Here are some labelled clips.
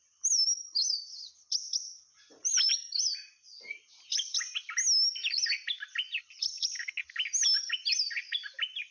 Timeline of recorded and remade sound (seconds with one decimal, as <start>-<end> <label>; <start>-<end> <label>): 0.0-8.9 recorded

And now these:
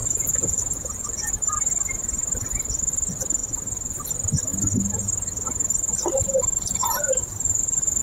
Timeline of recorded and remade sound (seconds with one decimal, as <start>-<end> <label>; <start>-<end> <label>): 0.0-1.3 remade; 1.3-3.4 recorded; 3.4-4.0 remade; 4.0-6.8 recorded; 6.8-8.0 remade

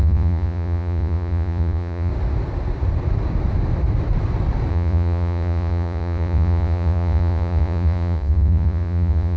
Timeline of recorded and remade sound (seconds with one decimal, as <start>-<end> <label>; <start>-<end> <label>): 0.0-2.1 remade; 2.1-4.7 recorded; 4.7-9.4 remade

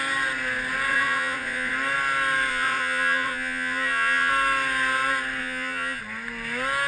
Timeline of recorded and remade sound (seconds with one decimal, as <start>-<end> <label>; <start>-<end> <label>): 0.0-0.9 recorded; 0.9-1.7 remade; 1.7-2.5 recorded; 2.5-4.3 remade; 4.3-5.4 recorded; 5.4-6.0 remade; 6.0-6.9 recorded

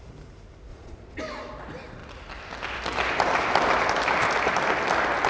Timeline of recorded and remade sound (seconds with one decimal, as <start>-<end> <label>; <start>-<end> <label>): 0.0-0.7 recorded; 0.7-1.2 remade; 1.2-5.3 recorded

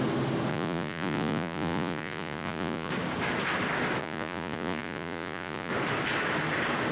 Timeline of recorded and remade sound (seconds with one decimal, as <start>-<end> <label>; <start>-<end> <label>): 0.0-0.5 recorded; 0.5-2.9 remade; 2.9-4.0 recorded; 4.0-5.7 remade; 5.7-6.9 recorded

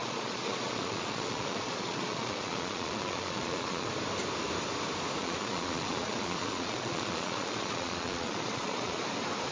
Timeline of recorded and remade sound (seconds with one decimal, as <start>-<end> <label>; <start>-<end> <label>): 0.0-3.9 remade; 3.9-5.2 recorded; 5.2-9.0 remade; 9.0-9.5 recorded